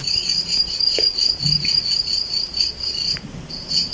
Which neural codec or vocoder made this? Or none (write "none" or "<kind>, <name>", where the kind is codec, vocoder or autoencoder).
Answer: none